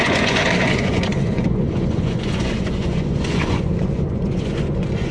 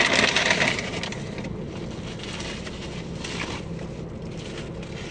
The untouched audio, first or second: second